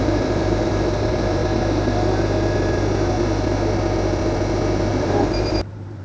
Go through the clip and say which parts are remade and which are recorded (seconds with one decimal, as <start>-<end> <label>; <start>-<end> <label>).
0.0-1.4 remade; 1.4-4.9 recorded; 4.9-6.0 remade